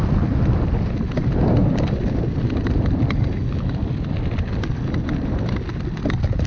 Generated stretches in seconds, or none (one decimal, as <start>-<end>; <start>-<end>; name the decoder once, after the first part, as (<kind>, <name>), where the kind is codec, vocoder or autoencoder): none